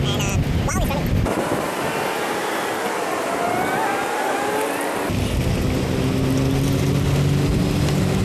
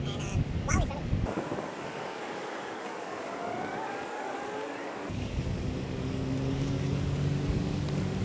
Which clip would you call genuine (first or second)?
first